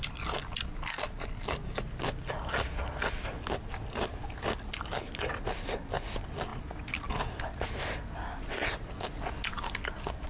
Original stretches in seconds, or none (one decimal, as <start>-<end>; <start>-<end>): 0.0-10.3